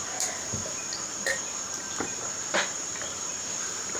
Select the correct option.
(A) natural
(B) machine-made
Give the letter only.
B